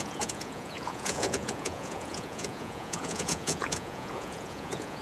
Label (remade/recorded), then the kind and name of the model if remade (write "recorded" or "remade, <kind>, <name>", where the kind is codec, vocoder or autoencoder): remade, vocoder, Vocos